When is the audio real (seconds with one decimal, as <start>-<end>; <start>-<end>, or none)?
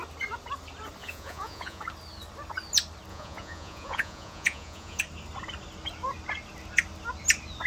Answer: 0.0-1.0; 1.8-3.1; 5.0-7.7